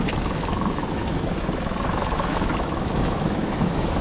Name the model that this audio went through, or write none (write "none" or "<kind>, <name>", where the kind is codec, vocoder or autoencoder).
autoencoder, DAC-VAE